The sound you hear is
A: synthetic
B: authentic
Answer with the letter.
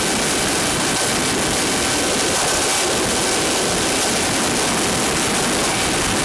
B